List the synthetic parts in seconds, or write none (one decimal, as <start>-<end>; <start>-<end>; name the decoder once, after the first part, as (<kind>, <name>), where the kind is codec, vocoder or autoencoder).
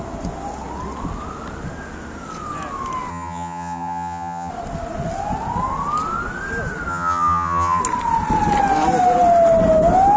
3.1-4.5 (vocoder, HiFi-GAN); 6.9-7.8